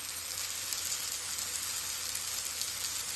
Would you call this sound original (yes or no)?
yes